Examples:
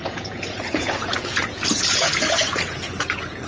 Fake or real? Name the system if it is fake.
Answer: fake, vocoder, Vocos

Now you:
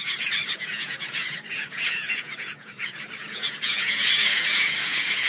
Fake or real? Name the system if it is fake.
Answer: fake, vocoder, Vocos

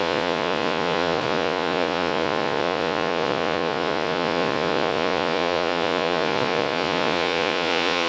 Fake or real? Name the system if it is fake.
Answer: fake, vocoder, Vocos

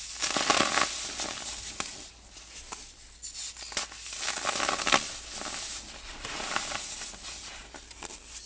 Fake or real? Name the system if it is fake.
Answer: real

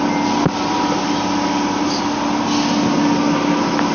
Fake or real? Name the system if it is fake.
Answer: real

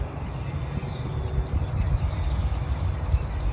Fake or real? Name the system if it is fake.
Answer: real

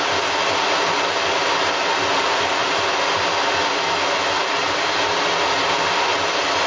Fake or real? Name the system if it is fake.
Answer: real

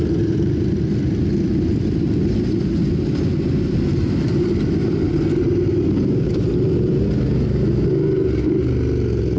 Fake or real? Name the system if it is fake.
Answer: real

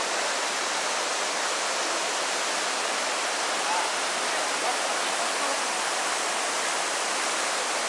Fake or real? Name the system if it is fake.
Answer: real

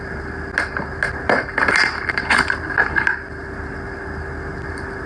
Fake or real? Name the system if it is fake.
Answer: real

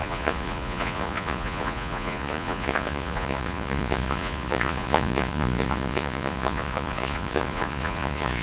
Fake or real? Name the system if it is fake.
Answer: fake, vocoder, Vocos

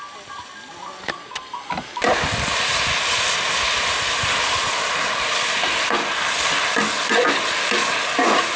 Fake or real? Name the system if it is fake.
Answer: real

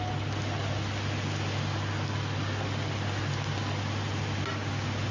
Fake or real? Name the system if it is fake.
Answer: real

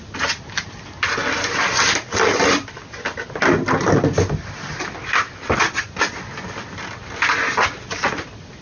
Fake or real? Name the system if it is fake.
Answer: real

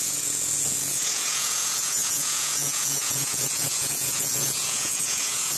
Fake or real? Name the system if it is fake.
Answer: fake, vocoder, Vocos